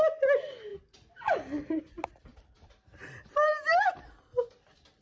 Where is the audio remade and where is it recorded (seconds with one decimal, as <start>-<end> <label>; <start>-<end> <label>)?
0.0-2.3 recorded; 2.3-4.0 remade; 4.0-5.0 recorded